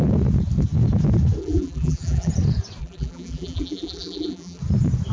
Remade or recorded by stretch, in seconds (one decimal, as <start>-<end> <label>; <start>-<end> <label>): 0.0-1.4 recorded; 1.4-2.3 remade; 2.3-2.8 recorded; 2.8-4.6 remade; 4.6-5.1 recorded

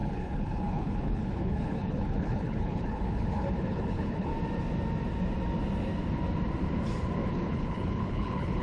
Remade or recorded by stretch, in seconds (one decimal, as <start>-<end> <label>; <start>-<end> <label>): 0.0-4.3 remade; 4.3-7.3 recorded; 7.3-8.6 remade

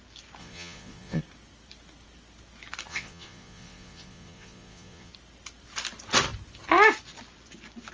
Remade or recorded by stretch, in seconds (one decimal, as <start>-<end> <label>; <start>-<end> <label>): 0.0-0.4 recorded; 0.4-1.2 remade; 1.2-2.9 recorded; 2.9-5.1 remade; 5.1-7.9 recorded

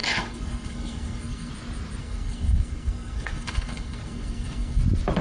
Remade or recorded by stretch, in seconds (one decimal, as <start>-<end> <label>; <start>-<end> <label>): 0.0-1.5 remade; 1.5-2.0 recorded; 2.0-4.8 remade; 4.8-5.2 recorded

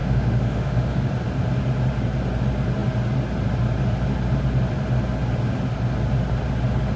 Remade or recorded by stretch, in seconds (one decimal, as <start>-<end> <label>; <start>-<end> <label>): 0.0-1.1 remade; 1.1-7.0 recorded

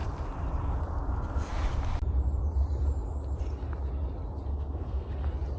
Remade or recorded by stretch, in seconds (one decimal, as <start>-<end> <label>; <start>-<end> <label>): 0.0-4.5 recorded; 4.5-5.1 remade; 5.1-5.6 recorded

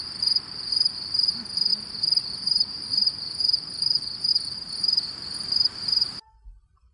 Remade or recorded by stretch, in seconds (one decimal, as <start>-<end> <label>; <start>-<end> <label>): 0.0-6.9 remade